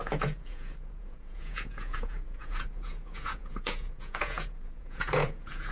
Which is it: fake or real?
fake